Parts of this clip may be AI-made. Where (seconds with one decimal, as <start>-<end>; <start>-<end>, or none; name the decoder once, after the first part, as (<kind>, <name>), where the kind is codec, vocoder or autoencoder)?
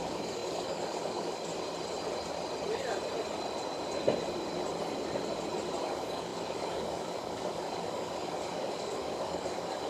0.0-1.5 (codec, DAC); 5.8-9.9